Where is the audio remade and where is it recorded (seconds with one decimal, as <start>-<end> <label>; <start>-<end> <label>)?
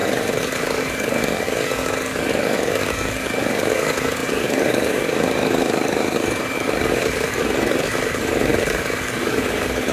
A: 0.0-9.9 remade